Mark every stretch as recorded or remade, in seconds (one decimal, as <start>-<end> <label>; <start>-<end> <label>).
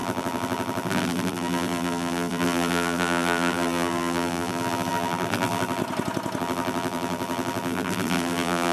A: 0.0-5.8 remade; 5.8-6.4 recorded; 6.4-8.7 remade